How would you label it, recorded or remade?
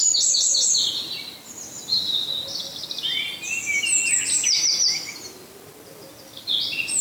recorded